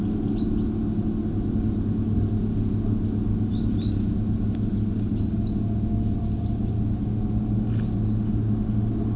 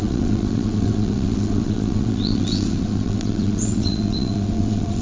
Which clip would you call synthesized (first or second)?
second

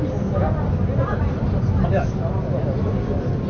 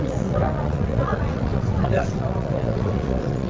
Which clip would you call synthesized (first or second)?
second